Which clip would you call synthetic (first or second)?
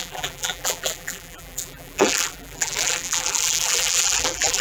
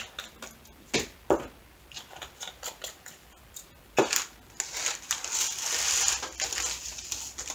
first